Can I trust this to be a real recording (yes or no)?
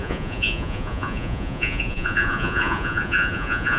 no